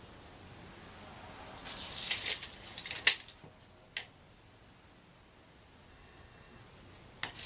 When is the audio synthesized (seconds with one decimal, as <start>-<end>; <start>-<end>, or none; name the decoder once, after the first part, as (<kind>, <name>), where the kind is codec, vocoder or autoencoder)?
5.9-6.6 (codec, SNAC)

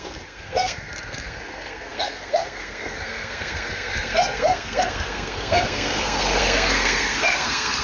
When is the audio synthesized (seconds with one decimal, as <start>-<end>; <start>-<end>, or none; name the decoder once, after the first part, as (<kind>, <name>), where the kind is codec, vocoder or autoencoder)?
0.0-7.8 (codec, SNAC)

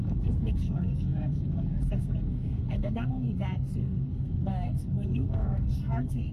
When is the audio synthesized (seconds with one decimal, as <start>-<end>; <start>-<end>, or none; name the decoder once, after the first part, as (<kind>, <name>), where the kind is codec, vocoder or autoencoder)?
0.0-6.3 (codec, SNAC)

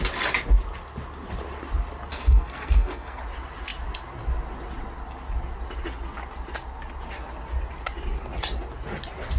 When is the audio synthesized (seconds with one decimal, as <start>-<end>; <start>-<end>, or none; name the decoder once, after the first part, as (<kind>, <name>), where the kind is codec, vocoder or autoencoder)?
2.1-3.2 (codec, SNAC)